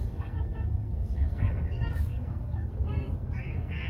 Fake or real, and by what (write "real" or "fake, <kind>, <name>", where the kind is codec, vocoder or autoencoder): fake, codec, SNAC